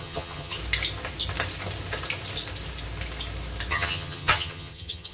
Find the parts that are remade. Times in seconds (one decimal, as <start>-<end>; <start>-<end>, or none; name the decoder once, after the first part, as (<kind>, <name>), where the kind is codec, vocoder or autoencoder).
0.0-0.6 (vocoder, HiFi-GAN); 3.7-5.1